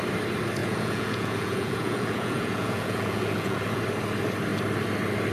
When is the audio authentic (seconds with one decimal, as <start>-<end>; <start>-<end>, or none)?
0.0-0.6; 3.8-5.3